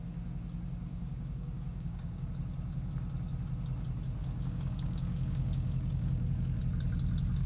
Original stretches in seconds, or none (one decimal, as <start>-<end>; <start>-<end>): 0.0-0.9; 2.3-4.2; 6.6-7.5